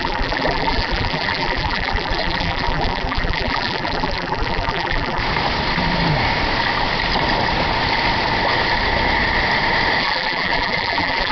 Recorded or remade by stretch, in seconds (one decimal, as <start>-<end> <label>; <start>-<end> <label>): 0.0-5.2 remade; 5.2-10.0 recorded; 10.0-11.3 remade